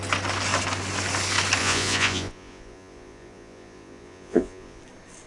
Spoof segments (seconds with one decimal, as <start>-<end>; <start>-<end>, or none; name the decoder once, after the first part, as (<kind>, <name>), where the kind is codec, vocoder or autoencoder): 1.6-4.8 (vocoder, Vocos)